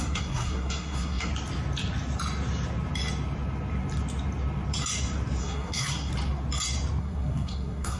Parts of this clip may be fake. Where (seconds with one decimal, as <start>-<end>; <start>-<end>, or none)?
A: 0.0-1.3; 5.4-6.1; 7.0-8.0